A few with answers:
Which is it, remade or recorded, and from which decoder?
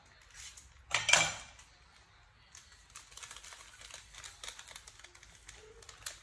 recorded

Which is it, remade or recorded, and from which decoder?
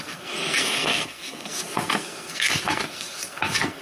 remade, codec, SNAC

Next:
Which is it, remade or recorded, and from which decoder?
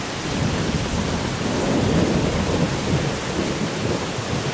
recorded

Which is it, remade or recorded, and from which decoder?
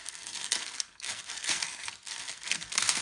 remade, codec, SNAC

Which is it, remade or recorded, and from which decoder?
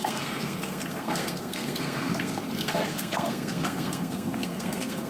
remade, codec, SNAC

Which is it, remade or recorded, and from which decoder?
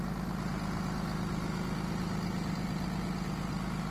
recorded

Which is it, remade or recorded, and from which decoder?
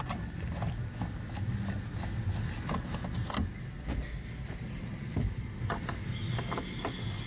recorded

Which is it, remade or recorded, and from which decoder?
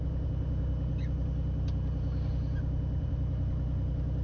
recorded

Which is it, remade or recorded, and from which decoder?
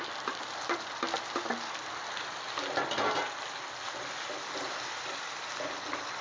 recorded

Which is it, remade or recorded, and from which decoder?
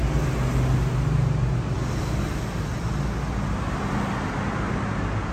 recorded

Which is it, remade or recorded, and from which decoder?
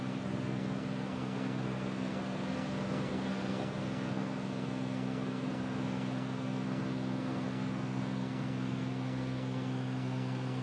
remade, codec, SNAC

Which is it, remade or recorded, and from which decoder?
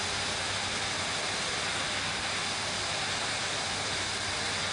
recorded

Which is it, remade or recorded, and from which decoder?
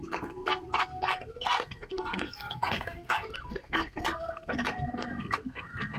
remade, codec, SNAC